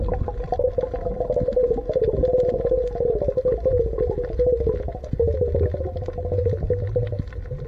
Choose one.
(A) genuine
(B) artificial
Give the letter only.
A